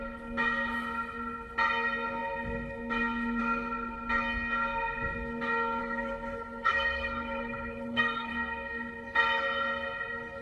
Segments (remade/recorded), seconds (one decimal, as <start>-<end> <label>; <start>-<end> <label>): 0.0-5.8 recorded; 5.8-8.3 remade; 8.3-10.4 recorded